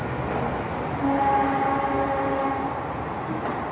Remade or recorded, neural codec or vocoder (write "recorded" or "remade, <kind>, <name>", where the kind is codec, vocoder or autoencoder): recorded